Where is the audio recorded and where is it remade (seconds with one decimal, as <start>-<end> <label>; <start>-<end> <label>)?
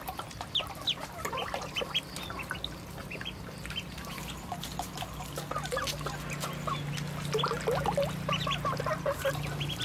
0.0-3.0 recorded; 3.0-4.0 remade; 4.0-9.8 recorded